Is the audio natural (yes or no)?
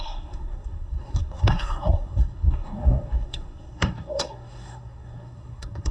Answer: no